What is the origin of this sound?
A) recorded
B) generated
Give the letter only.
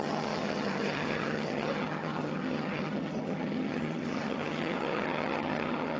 B